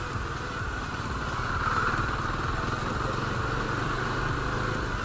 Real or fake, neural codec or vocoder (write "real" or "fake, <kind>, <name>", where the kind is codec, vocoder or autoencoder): real